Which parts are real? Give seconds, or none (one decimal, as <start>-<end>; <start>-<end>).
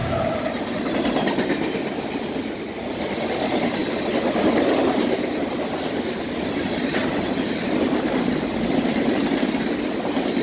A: 0.0-3.8; 7.0-10.4